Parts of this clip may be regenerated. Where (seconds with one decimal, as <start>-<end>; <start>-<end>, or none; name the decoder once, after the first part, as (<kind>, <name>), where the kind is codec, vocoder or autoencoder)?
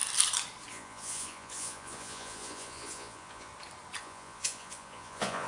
0.7-3.5 (vocoder, Vocos); 4.0-5.5